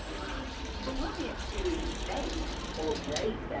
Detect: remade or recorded remade